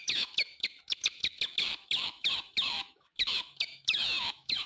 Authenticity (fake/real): fake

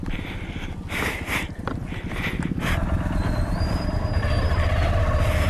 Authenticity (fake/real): real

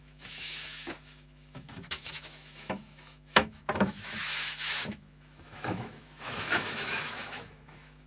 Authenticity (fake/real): fake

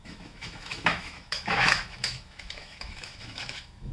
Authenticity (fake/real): fake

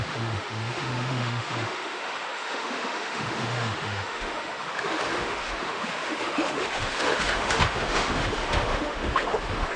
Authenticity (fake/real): fake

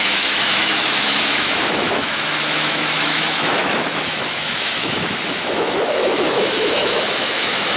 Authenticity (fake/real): fake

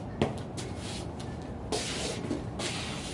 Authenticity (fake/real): real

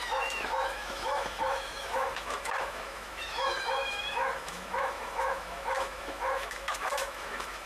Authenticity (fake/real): fake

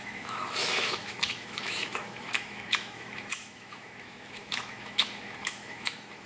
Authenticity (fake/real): fake